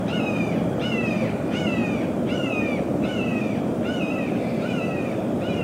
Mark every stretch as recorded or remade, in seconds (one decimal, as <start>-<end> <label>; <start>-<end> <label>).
0.0-1.8 remade; 1.8-2.8 recorded; 2.8-5.6 remade